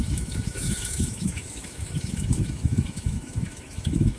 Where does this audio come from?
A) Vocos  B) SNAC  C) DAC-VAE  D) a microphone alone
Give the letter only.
C